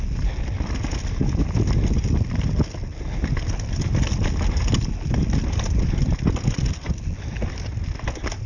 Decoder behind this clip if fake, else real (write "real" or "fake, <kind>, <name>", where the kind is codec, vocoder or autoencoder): real